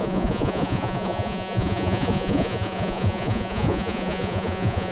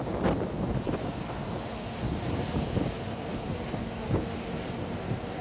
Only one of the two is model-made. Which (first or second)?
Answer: first